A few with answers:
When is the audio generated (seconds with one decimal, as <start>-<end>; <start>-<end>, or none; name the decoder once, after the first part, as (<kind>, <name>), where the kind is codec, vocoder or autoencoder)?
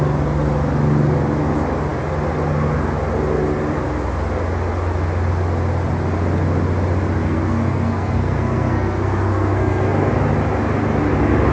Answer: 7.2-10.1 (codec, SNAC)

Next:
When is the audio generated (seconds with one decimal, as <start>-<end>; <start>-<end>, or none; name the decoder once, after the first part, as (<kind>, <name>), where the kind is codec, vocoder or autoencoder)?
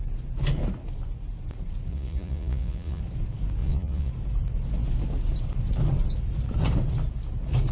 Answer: 1.9-3.0 (vocoder, Vocos); 3.6-4.1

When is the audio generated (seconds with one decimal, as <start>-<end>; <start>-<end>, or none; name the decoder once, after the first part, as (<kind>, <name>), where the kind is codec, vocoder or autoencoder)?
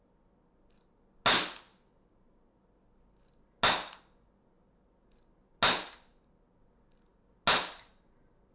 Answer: none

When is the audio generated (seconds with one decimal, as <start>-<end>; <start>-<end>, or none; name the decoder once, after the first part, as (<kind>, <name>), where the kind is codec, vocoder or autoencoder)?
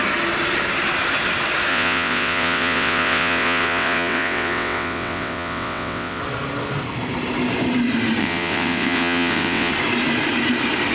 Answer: 1.7-6.2 (vocoder, WaveNeXt); 8.2-9.7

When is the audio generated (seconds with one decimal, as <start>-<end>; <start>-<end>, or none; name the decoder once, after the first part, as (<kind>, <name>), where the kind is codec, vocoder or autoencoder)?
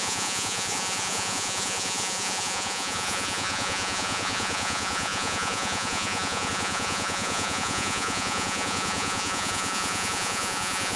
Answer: 0.0-11.0 (vocoder, Vocos)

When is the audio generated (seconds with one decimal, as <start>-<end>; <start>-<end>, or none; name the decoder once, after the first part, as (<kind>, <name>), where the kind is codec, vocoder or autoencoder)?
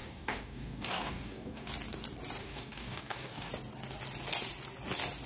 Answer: 0.0-1.7 (codec, DAC); 2.4-3.5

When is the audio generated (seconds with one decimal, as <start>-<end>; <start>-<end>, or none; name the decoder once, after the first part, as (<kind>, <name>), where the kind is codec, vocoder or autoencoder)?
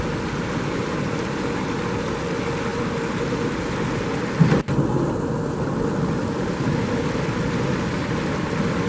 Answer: 2.7-4.8 (vocoder, BigVGAN v2); 6.2-6.8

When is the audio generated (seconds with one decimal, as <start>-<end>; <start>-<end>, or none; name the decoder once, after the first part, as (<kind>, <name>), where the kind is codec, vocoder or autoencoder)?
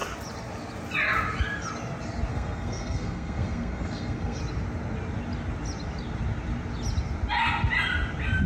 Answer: 2.3-4.4 (codec, SNAC)